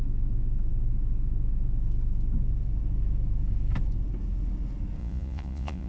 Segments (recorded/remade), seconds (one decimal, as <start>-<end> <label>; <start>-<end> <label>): 0.0-5.0 recorded; 5.0-5.9 remade